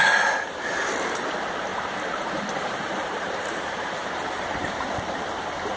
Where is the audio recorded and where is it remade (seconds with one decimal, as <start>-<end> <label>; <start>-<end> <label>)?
0.0-1.7 recorded; 1.7-4.9 remade; 4.9-5.8 recorded